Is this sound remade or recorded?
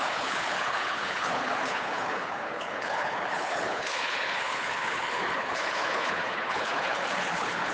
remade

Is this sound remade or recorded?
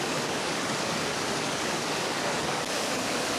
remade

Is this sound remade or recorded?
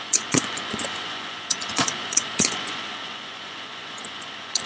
remade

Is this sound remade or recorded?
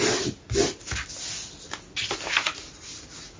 recorded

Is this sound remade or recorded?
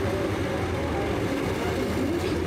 recorded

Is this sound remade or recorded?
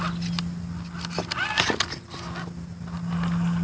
recorded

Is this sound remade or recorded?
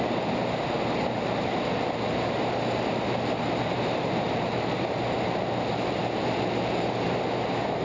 recorded